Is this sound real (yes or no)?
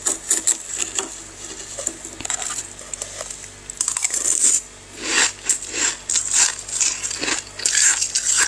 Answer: yes